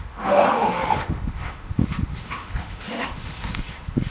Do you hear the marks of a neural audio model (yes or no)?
yes